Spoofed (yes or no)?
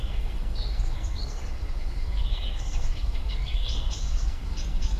yes